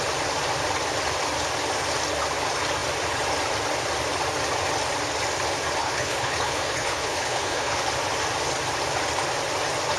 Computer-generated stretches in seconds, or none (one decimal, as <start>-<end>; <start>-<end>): 5.8-7.8